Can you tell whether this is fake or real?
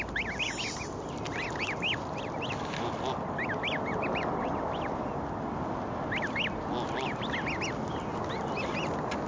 real